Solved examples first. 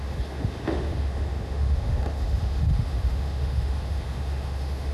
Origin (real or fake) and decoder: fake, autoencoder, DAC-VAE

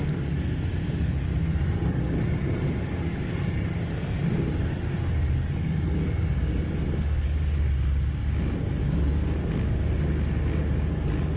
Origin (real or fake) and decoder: real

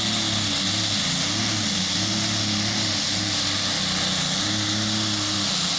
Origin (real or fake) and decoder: real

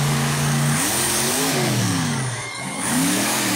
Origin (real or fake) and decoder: fake, codec, DAC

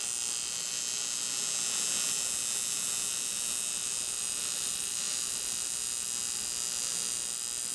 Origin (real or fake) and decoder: real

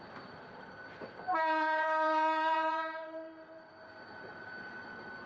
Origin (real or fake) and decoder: fake, vocoder, BigVGAN v2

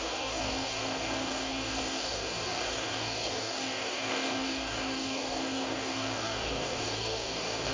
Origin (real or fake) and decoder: fake, codec, DAC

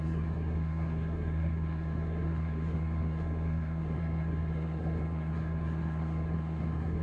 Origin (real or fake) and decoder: fake, codec, SNAC